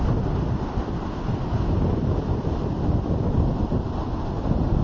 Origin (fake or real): real